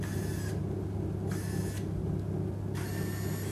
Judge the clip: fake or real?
real